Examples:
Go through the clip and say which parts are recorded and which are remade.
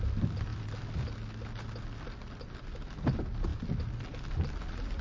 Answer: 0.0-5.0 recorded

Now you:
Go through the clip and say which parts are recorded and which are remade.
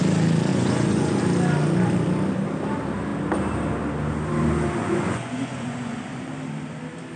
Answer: 0.0-0.5 recorded; 0.5-1.2 remade; 1.2-4.8 recorded; 4.8-6.3 remade; 6.3-7.2 recorded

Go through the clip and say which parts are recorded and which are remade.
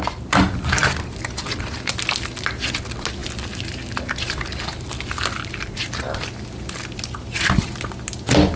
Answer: 0.0-8.6 recorded